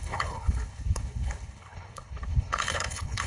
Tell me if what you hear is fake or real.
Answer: fake